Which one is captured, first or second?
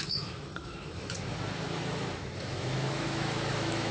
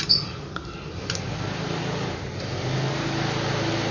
second